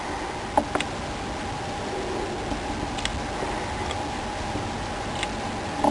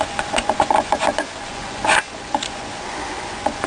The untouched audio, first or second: first